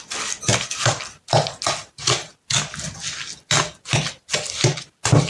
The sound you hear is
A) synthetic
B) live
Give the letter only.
B